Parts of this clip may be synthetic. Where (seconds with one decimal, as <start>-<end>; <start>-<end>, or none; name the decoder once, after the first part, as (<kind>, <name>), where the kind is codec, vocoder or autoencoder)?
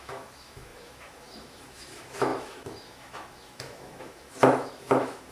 0.0-5.3 (autoencoder, DAC-VAE)